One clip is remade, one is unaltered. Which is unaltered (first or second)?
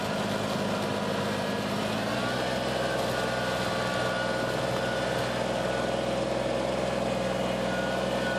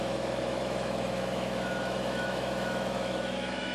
first